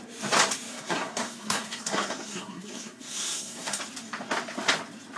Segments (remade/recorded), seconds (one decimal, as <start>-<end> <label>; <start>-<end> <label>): 0.0-0.7 recorded; 0.7-3.8 remade; 3.8-5.2 recorded